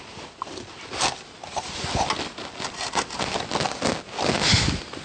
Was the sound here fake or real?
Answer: real